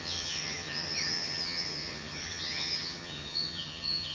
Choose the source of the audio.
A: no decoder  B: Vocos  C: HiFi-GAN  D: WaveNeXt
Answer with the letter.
C